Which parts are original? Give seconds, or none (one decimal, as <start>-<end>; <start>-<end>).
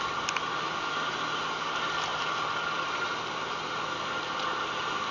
0.0-5.1